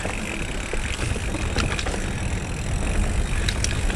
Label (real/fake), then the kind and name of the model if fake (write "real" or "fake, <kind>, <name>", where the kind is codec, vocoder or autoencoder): real